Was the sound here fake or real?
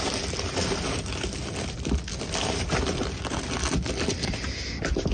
real